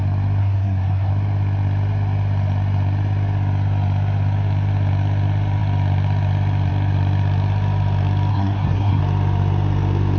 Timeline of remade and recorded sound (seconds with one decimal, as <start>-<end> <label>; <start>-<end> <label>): 0.0-0.4 recorded; 0.4-1.1 remade; 1.1-8.3 recorded; 8.3-9.0 remade; 9.0-10.2 recorded